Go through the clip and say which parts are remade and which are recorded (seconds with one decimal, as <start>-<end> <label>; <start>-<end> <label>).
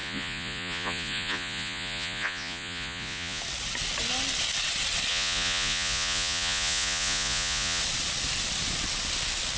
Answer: 0.0-3.4 remade; 3.4-5.1 recorded; 5.1-7.8 remade; 7.8-9.6 recorded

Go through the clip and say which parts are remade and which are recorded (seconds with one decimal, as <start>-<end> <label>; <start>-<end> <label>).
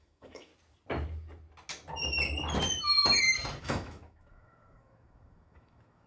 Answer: 0.0-0.5 remade; 0.5-3.6 recorded; 3.6-6.1 remade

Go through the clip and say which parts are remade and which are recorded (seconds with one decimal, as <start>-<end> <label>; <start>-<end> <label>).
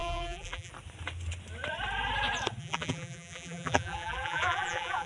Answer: 0.0-0.7 remade; 0.7-2.6 recorded; 2.6-5.1 remade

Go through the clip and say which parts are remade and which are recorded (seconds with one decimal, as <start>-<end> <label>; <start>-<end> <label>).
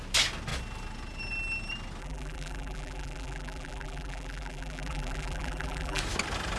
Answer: 0.0-2.0 recorded; 2.0-6.0 remade; 6.0-6.6 recorded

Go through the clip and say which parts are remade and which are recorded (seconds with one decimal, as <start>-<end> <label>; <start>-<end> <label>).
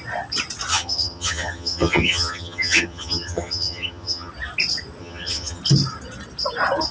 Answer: 0.0-0.7 recorded; 0.7-4.3 remade; 4.3-5.0 recorded; 5.0-5.6 remade; 5.6-6.9 recorded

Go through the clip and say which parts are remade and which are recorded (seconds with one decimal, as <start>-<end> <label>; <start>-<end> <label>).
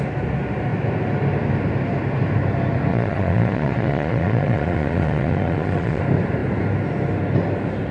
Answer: 0.0-2.9 recorded; 2.9-6.0 remade; 6.0-7.9 recorded